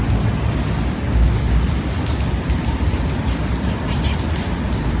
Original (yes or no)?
yes